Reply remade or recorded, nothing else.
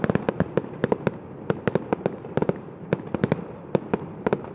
recorded